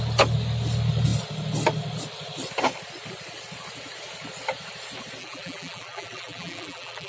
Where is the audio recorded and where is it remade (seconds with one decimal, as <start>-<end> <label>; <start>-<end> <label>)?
0.0-5.2 recorded; 5.2-7.1 remade